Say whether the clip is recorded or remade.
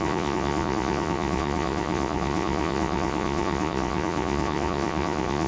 remade